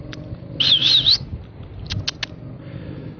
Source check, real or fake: real